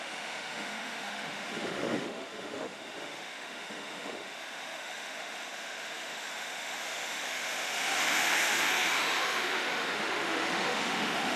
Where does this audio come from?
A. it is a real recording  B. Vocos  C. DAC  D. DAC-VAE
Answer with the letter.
D